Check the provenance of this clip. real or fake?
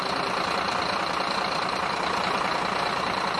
fake